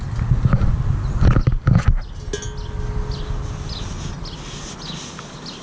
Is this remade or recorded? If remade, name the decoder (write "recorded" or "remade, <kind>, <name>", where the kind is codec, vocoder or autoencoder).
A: recorded